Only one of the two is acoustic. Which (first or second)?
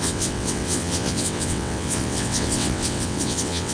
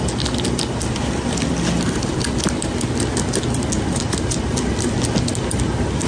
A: second